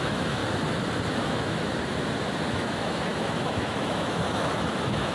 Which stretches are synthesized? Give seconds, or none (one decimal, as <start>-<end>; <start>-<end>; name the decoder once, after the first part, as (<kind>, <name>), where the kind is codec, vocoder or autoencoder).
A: 0.0-0.4 (autoencoder, DAC-VAE); 1.2-1.7; 2.5-5.1